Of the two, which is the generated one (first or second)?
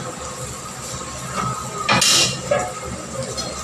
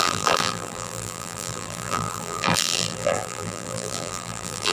second